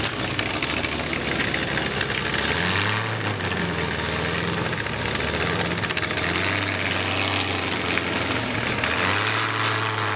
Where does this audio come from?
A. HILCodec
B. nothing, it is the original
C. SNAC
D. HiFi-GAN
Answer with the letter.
B